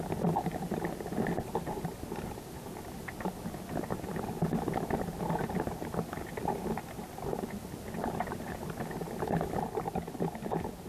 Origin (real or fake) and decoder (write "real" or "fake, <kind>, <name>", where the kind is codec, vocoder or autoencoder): real